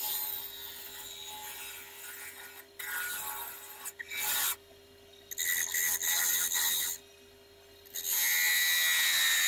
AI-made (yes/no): no